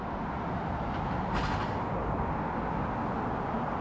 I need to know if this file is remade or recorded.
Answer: recorded